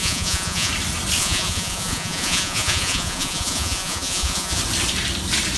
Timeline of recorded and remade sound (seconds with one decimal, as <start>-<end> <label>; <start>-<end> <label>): 0.0-0.7 remade; 0.7-1.2 recorded; 1.2-4.6 remade; 4.6-5.6 recorded